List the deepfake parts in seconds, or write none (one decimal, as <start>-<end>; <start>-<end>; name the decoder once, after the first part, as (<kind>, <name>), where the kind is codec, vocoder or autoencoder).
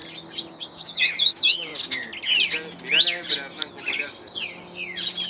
0.5-1.7 (codec, DAC)